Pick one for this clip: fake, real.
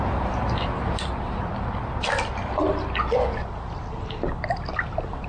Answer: real